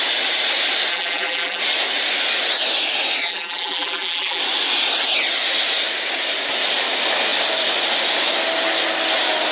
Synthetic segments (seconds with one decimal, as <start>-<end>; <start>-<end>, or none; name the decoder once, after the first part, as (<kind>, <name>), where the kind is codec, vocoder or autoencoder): 0.9-1.6 (vocoder, BigVGAN v2); 3.2-4.4